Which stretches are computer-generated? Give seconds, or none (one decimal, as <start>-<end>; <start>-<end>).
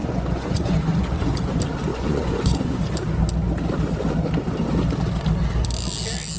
0.0-1.5; 1.9-2.8